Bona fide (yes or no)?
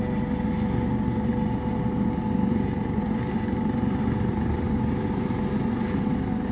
yes